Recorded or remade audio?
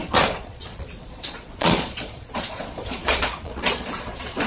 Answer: remade